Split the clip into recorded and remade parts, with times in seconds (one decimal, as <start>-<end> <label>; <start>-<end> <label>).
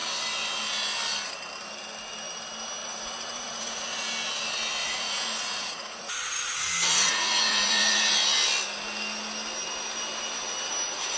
0.0-2.8 recorded; 2.8-4.1 remade; 4.1-4.8 recorded; 4.8-8.1 remade; 8.1-11.2 recorded